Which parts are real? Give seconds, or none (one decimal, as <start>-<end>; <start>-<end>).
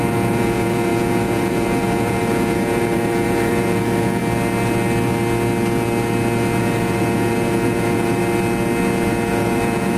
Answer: 4.2-6.6; 8.2-9.1